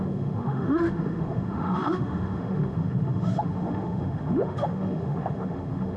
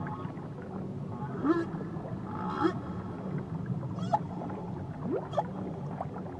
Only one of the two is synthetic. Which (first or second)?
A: first